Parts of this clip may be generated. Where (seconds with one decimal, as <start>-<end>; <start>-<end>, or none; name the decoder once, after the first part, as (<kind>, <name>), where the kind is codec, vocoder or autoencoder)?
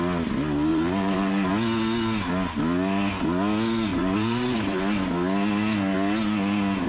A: 0.7-1.5 (vocoder, BigVGAN v2); 3.9-4.8